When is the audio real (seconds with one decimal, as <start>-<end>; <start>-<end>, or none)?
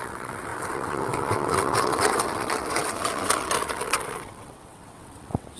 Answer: none